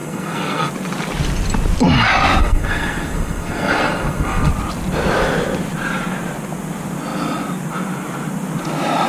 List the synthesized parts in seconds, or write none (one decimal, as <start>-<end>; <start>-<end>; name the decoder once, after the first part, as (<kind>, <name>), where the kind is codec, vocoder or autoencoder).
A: 0.0-0.7 (codec, SNAC); 2.4-4.5